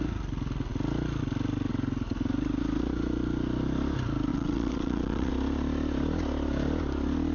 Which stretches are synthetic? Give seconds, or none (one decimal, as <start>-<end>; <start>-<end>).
4.3-5.3